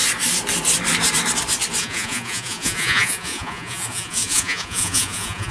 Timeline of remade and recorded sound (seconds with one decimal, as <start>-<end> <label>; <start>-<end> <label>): 0.0-1.8 recorded; 1.8-5.5 remade